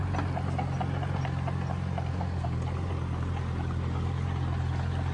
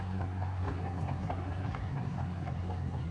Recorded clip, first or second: first